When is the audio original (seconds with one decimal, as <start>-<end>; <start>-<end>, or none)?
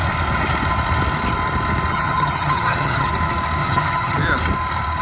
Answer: 0.0-1.9; 3.1-3.6; 4.2-5.0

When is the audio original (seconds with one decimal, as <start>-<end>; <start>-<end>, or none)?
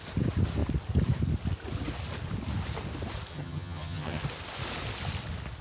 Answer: 0.0-3.3; 4.2-5.6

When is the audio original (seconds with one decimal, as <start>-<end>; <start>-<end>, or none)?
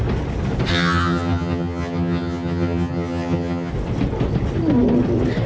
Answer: 0.0-0.7; 3.7-5.5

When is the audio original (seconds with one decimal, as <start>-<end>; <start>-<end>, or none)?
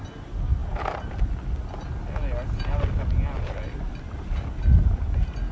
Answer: 0.0-5.5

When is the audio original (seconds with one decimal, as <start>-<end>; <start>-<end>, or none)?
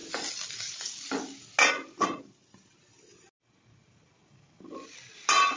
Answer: 0.0-5.6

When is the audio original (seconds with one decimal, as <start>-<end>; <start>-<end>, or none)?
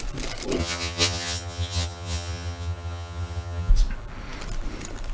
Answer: 0.0-0.6; 3.7-5.1